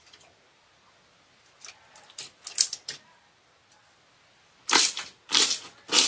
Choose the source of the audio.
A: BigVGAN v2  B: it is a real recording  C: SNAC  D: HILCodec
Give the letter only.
B